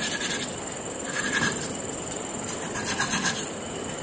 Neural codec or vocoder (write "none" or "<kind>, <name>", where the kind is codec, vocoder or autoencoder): vocoder, BigVGAN v2